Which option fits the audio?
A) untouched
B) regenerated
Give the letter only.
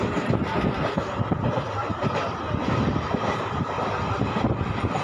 A